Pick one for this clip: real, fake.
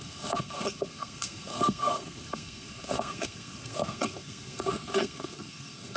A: fake